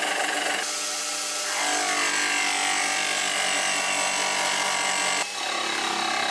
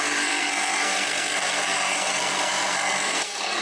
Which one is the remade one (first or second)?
second